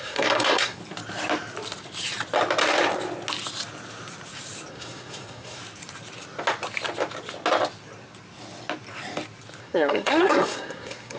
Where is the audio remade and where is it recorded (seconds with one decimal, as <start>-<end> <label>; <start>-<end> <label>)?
0.0-0.8 remade; 0.8-4.7 recorded; 4.7-5.6 remade; 5.6-9.6 recorded; 9.6-11.2 remade